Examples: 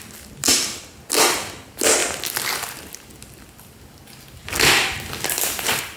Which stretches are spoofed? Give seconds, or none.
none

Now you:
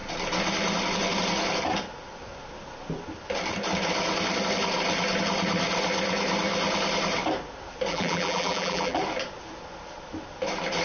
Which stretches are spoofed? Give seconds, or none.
7.9-9.0 (vocoder, BigVGAN v2)

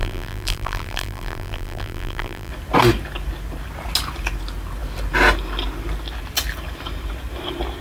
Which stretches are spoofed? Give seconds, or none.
0.0-2.5 (vocoder, BigVGAN v2)